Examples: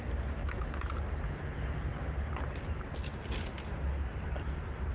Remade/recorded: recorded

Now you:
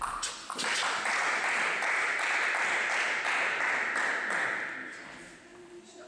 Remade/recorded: recorded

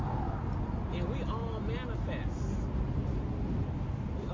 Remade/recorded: recorded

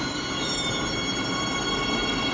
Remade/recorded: recorded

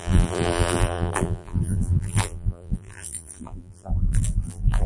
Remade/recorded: remade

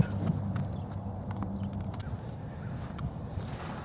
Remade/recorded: recorded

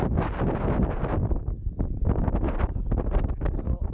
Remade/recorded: recorded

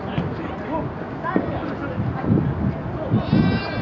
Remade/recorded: recorded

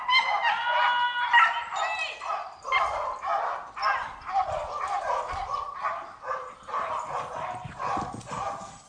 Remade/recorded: recorded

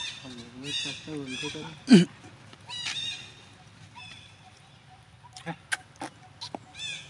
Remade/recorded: recorded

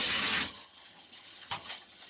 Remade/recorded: remade